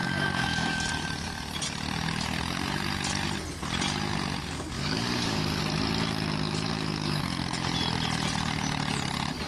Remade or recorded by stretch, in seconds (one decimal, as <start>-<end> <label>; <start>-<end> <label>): 0.0-0.9 remade; 0.9-4.4 recorded; 4.4-5.6 remade; 5.6-6.7 recorded; 6.7-7.2 remade; 7.2-9.5 recorded